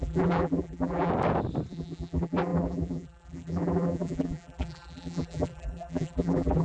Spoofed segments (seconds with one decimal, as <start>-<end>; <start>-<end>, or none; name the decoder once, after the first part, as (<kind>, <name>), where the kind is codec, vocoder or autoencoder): 0.0-1.1 (vocoder, BigVGAN v2); 1.7-6.6